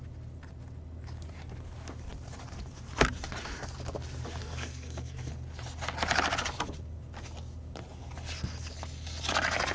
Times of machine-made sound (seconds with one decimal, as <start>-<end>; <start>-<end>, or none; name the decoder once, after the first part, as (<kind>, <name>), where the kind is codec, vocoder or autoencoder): 4.4-5.3 (codec, SNAC)